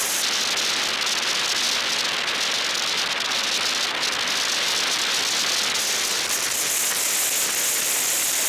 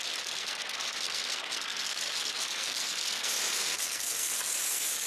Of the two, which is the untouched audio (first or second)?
first